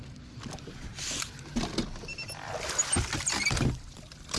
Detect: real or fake real